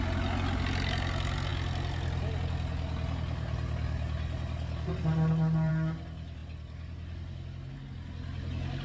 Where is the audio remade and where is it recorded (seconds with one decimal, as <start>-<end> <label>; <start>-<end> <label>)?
0.0-8.8 recorded